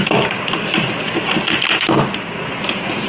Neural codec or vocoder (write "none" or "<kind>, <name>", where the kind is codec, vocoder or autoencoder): none